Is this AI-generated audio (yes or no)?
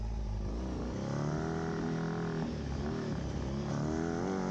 no